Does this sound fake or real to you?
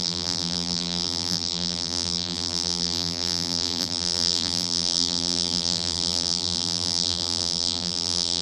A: fake